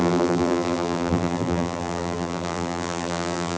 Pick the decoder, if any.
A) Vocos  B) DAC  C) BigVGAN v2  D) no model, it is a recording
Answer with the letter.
C